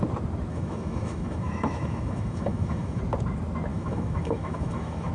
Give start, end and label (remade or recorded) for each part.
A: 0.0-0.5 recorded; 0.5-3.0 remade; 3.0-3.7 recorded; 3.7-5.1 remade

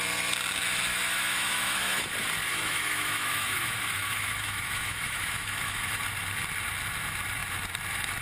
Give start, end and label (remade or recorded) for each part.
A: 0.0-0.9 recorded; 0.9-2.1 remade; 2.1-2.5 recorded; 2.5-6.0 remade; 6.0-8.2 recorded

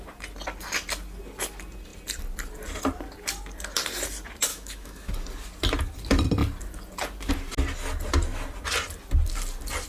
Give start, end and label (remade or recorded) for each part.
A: 0.0-4.5 recorded; 4.5-5.1 remade; 5.1-9.9 recorded

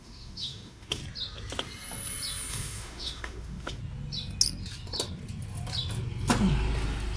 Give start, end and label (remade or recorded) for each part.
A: 0.0-1.0 remade; 1.0-2.5 recorded; 2.5-3.8 remade; 3.8-7.2 recorded

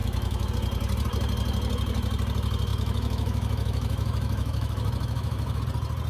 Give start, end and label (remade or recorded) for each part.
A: 0.0-0.5 remade; 0.5-2.7 recorded; 2.7-5.6 remade; 5.6-6.1 recorded

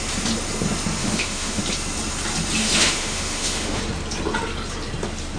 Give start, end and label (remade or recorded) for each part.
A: 0.0-1.0 recorded; 1.0-1.6 remade; 1.6-2.6 recorded; 2.6-3.8 remade; 3.8-5.4 recorded

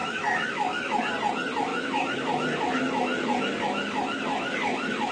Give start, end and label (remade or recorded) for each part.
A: 0.0-1.1 remade; 1.1-1.7 recorded; 1.7-5.1 remade